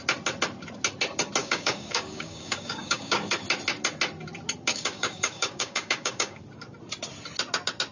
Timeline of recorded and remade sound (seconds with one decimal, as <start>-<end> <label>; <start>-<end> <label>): 0.0-1.4 recorded; 1.4-3.3 remade; 3.3-4.7 recorded; 4.7-6.4 remade; 6.4-7.9 recorded